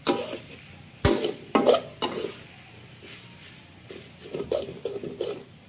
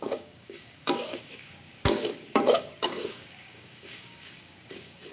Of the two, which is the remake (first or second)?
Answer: second